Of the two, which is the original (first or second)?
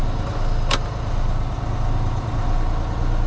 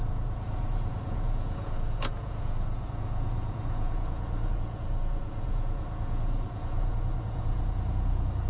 first